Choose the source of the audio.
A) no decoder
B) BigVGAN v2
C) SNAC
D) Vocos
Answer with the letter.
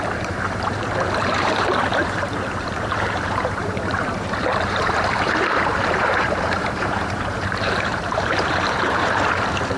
B